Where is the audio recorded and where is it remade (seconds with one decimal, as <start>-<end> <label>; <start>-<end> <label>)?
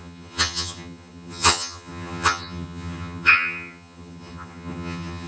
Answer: 0.0-5.3 remade